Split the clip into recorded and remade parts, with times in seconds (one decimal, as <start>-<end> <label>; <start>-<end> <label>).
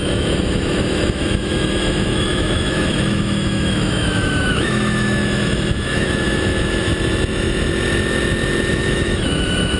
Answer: 0.0-6.9 remade; 6.9-8.7 recorded; 8.7-9.8 remade